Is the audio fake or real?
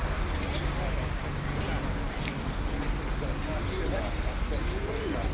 real